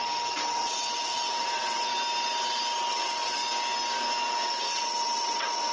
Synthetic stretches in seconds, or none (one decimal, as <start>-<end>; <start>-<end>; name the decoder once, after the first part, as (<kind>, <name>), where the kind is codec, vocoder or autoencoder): 0.0-1.9 (vocoder, WaveNeXt); 2.9-3.4; 4.3-5.7